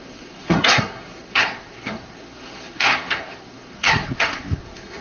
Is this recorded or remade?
remade